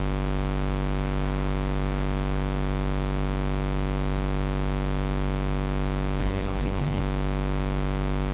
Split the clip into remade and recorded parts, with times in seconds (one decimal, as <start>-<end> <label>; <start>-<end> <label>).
0.0-6.2 recorded; 6.2-7.0 remade; 7.0-8.3 recorded